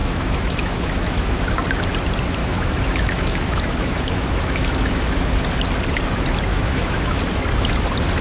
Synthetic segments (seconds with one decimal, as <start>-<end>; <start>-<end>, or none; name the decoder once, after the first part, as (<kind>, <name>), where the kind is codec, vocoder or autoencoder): 0.0-1.6 (autoencoder, DAC-VAE); 2.4-5.4; 6.5-7.2